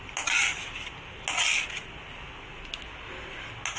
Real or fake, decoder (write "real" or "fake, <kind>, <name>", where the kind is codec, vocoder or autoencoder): real